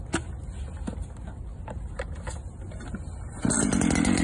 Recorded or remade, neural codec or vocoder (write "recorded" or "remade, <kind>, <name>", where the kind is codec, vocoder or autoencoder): recorded